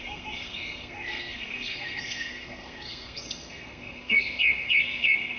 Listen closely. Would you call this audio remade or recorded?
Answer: remade